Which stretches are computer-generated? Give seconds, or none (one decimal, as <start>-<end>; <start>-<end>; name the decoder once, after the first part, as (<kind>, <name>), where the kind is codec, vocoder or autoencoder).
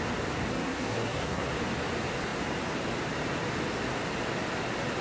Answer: 0.5-1.5 (codec, SNAC)